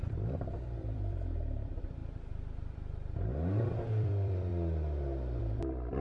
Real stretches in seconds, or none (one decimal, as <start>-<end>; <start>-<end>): 4.5-5.4

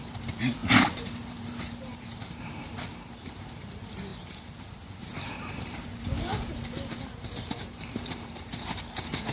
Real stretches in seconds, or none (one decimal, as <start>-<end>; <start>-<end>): none